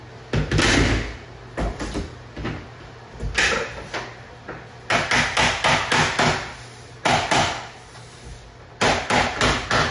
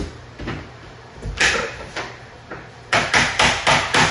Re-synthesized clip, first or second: second